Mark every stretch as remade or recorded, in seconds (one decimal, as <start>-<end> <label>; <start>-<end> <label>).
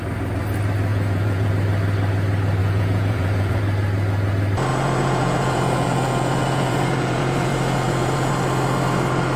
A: 0.0-0.9 recorded; 0.9-1.5 remade; 1.5-2.6 recorded; 2.6-3.6 remade; 3.6-4.7 recorded; 4.7-8.3 remade; 8.3-9.4 recorded